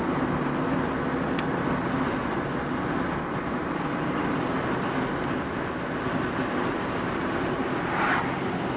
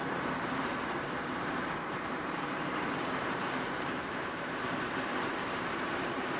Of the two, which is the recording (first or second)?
first